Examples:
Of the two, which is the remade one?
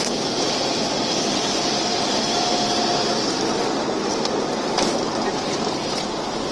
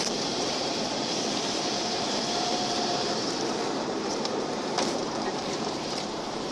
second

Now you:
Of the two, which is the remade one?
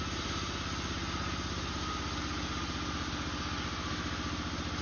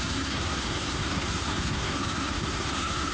second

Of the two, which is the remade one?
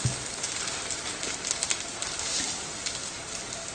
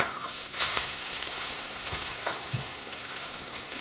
second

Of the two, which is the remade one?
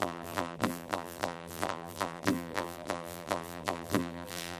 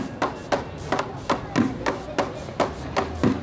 first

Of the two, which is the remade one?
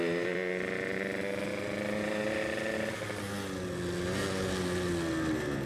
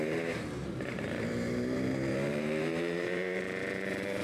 second